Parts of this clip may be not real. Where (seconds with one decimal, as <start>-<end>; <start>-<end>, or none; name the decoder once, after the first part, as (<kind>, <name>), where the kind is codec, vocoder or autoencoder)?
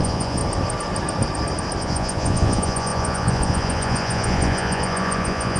0.0-0.4 (vocoder, Vocos); 1.8-5.6